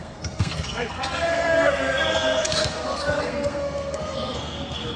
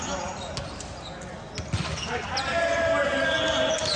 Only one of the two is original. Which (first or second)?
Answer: second